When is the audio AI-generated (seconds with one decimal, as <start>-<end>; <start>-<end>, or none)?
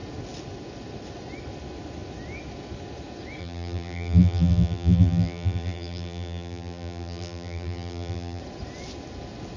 3.4-8.4